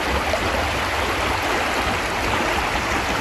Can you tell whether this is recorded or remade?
recorded